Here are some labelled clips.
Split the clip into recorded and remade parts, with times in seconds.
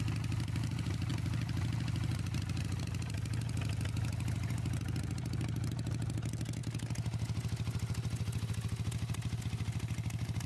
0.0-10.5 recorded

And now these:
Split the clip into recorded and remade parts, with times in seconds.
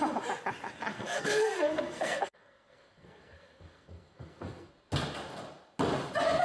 0.0-0.9 recorded; 0.9-4.7 remade; 4.7-6.4 recorded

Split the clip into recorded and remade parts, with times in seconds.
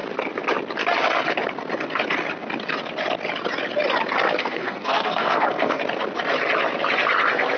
0.0-4.4 recorded; 4.4-5.8 remade; 5.8-7.6 recorded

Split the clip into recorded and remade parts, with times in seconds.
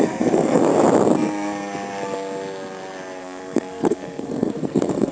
0.0-0.7 remade; 0.7-3.2 recorded; 3.2-5.1 remade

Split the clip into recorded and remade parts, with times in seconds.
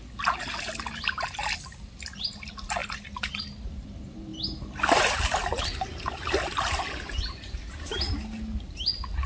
0.0-9.3 recorded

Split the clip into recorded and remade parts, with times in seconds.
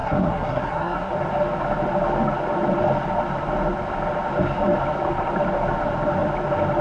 0.0-1.1 remade; 1.1-6.8 recorded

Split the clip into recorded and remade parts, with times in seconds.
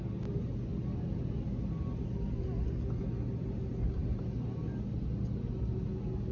0.0-6.3 recorded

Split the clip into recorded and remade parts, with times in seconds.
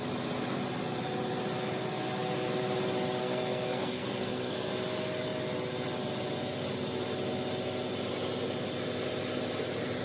0.0-3.2 recorded; 3.2-4.7 remade; 4.7-10.0 recorded